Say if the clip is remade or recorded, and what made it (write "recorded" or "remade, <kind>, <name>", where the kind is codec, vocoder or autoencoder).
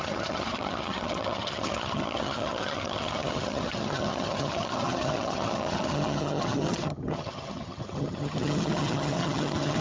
remade, vocoder, HiFi-GAN